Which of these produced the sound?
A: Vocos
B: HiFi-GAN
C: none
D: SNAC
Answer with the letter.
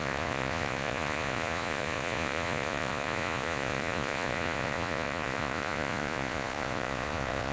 A